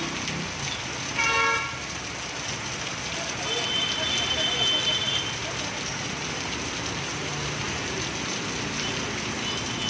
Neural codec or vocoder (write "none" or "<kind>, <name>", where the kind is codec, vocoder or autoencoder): none